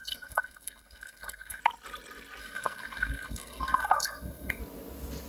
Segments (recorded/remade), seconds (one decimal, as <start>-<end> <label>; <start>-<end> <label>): 0.0-1.6 remade; 1.6-2.4 recorded; 2.4-4.6 remade; 4.6-5.3 recorded